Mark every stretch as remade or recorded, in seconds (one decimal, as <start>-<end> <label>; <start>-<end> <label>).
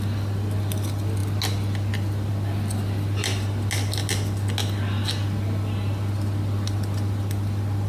0.0-7.9 recorded